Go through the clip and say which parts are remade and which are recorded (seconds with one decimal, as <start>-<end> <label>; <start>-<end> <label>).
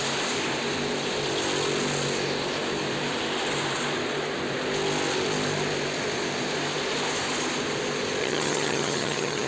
0.0-8.2 recorded; 8.2-9.5 remade